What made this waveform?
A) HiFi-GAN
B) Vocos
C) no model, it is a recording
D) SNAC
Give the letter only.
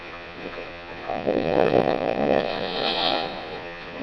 B